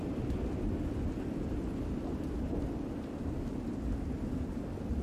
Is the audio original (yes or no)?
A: yes